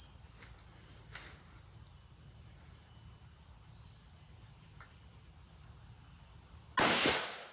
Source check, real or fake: real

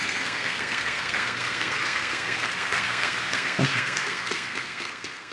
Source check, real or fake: fake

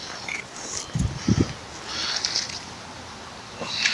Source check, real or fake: real